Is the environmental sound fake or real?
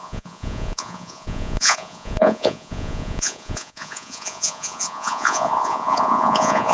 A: fake